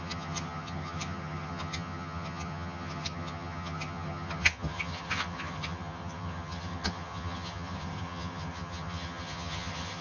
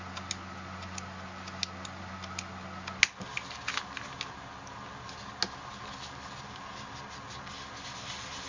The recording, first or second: second